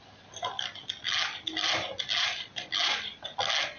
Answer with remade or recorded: recorded